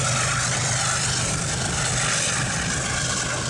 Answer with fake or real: real